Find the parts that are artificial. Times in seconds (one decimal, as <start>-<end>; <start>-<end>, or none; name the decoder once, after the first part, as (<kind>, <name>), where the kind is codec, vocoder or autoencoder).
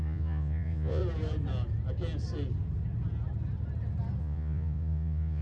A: 0.0-1.0 (vocoder, Vocos); 4.2-5.4